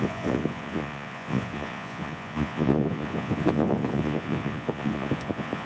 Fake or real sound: fake